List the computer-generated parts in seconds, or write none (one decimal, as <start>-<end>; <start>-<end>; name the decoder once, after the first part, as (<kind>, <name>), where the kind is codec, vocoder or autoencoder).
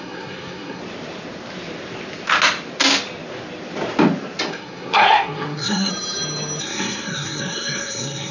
0.0-0.8 (codec, SNAC); 4.5-5.9; 6.6-8.3